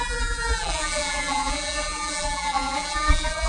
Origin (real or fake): fake